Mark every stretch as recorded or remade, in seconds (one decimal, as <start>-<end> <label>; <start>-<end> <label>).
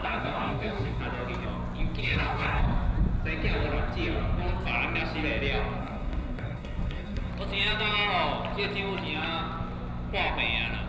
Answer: 0.0-1.0 remade; 1.0-2.0 recorded; 2.0-2.6 remade; 2.6-5.8 recorded; 5.8-7.3 remade; 7.3-10.9 recorded